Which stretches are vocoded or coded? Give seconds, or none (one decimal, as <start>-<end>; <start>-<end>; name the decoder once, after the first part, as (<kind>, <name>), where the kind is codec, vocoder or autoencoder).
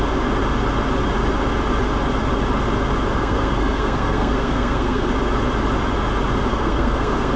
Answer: 3.1-5.1 (codec, SNAC); 6.5-7.4